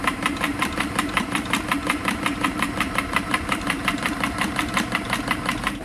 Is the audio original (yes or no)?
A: no